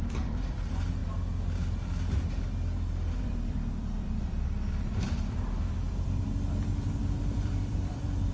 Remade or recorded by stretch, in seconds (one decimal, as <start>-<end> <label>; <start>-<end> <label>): 0.0-1.0 remade; 1.0-3.2 recorded; 3.2-8.3 remade